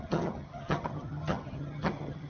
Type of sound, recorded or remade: remade